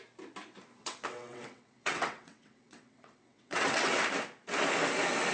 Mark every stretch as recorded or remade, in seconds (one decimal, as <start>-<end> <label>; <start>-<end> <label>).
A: 0.0-0.8 recorded; 0.8-4.0 remade; 4.0-5.3 recorded